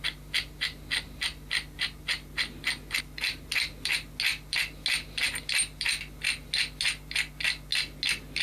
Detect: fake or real real